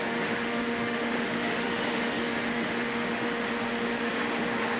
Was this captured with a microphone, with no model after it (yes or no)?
no